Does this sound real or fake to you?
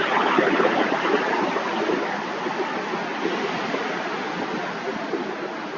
real